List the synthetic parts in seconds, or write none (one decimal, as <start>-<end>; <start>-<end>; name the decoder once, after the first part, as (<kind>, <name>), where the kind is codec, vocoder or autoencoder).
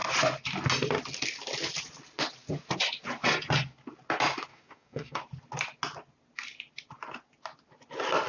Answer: 4.5-5.2 (codec, DAC)